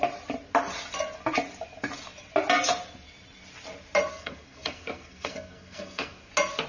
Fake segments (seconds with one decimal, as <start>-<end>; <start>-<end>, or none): 4.1-6.3